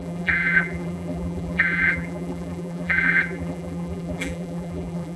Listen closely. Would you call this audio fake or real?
fake